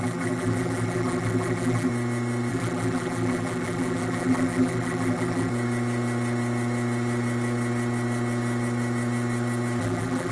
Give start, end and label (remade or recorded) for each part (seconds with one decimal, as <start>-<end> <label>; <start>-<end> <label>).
0.0-1.9 remade; 1.9-2.5 recorded; 2.5-5.5 remade; 5.5-9.8 recorded; 9.8-10.3 remade